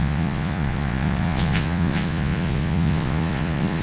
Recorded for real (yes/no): no